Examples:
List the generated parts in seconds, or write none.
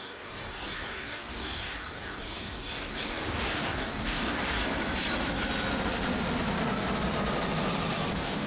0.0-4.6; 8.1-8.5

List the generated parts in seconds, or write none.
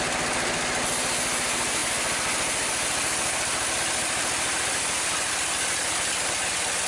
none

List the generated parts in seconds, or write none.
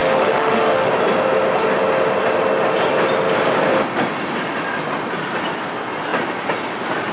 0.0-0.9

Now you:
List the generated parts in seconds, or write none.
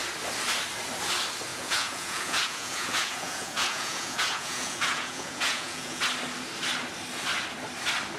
1.5-6.0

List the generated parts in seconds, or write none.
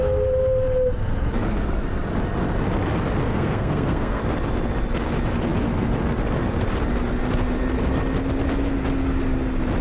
3.3-4.2